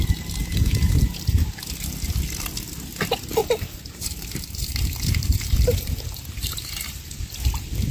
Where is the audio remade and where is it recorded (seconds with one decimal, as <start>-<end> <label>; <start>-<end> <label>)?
0.0-0.4 recorded; 0.4-1.5 remade; 1.5-3.4 recorded; 3.4-7.2 remade; 7.2-7.9 recorded